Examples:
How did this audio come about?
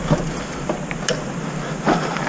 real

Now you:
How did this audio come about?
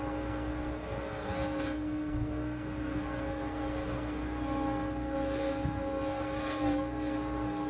fake